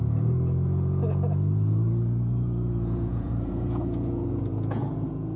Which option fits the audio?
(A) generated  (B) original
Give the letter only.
A